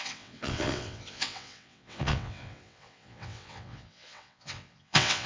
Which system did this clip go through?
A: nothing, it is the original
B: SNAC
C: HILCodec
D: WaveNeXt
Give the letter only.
D